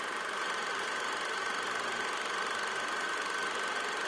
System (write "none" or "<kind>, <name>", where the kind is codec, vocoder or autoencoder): none